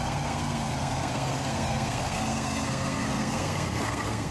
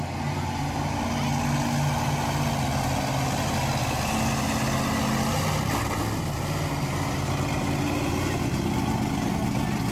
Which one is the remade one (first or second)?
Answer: first